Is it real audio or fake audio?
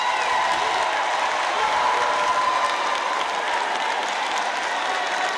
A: real